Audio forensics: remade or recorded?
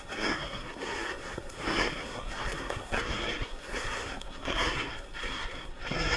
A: remade